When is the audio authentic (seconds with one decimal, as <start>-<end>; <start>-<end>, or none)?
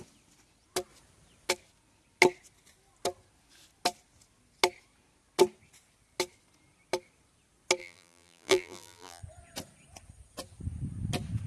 0.0-7.8; 9.2-11.5